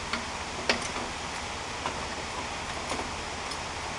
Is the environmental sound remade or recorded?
recorded